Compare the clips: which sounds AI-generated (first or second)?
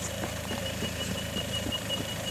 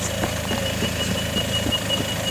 first